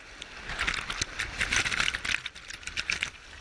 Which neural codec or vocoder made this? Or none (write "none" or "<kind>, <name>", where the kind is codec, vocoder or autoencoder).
none